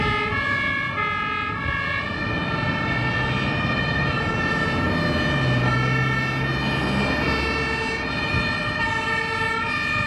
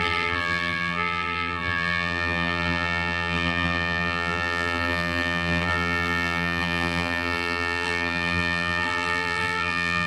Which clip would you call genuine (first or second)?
first